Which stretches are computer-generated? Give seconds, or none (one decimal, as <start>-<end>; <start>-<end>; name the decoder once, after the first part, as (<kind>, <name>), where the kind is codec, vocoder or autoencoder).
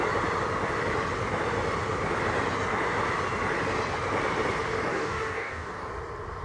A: 4.9-5.9 (codec, DAC)